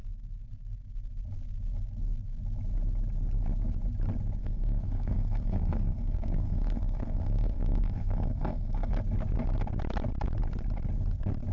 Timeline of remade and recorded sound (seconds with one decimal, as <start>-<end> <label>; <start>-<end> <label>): 0.0-4.4 recorded; 4.4-8.9 remade; 8.9-11.5 recorded